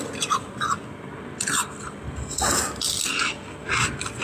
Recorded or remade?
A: recorded